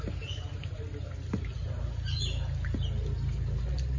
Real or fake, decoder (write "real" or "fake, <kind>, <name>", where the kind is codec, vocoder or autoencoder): real